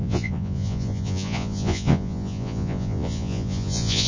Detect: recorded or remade remade